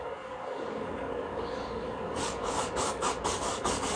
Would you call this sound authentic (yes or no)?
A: no